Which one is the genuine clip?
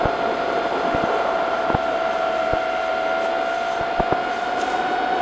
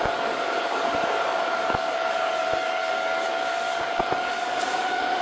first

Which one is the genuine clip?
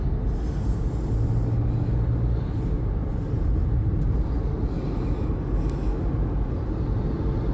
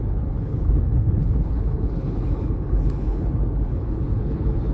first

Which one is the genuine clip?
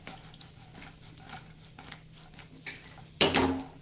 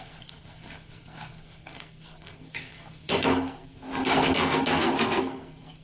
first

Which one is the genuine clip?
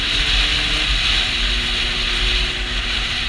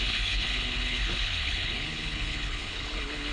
first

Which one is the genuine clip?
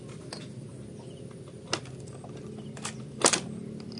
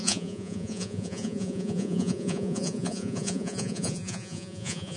first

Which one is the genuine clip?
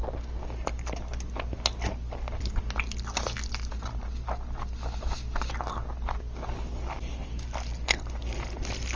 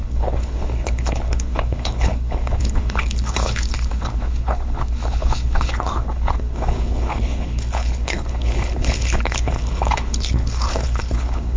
first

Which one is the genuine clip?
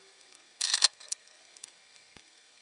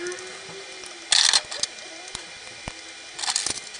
second